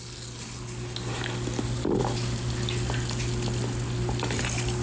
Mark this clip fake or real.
real